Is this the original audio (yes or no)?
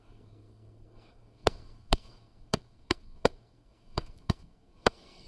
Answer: no